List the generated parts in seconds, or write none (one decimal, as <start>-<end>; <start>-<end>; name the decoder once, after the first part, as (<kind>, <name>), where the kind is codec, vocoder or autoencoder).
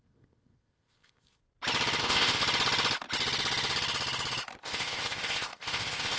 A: 0.0-1.4 (codec, ZipCodec); 2.0-2.4; 4.6-6.2